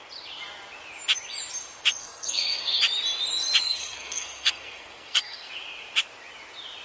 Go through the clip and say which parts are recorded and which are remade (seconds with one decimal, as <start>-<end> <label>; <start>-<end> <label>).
0.0-2.0 recorded; 2.0-2.8 remade; 2.8-3.6 recorded; 3.6-5.5 remade; 5.5-6.8 recorded